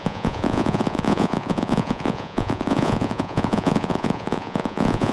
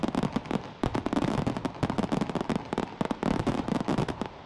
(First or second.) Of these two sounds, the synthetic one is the first